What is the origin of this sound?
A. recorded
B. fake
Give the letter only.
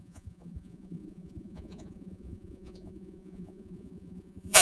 B